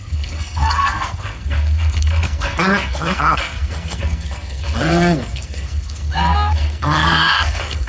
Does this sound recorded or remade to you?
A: remade